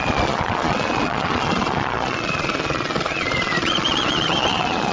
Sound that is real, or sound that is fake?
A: fake